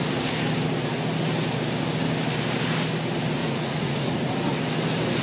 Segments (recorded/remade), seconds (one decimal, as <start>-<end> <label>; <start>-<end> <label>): 0.0-3.4 recorded; 3.4-4.3 remade; 4.3-5.2 recorded